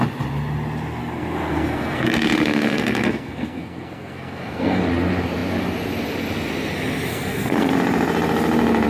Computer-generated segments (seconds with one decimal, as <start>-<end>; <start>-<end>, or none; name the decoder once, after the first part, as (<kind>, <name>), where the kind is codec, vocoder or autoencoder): 1.0-4.8 (codec, SNAC); 7.1-7.7